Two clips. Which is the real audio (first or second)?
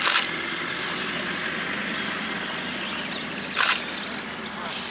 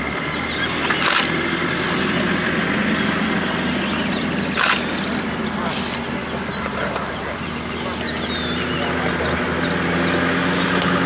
second